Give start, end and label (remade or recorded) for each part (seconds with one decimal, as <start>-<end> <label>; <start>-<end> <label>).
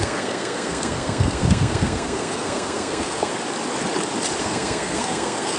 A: 0.0-3.3 remade; 3.3-4.4 recorded; 4.4-5.6 remade